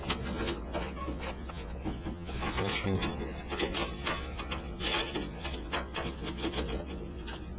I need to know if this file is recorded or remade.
remade